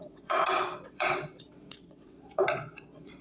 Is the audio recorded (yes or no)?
no